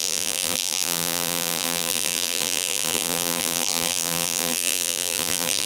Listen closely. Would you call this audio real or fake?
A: fake